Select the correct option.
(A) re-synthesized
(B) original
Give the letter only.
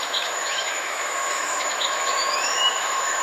A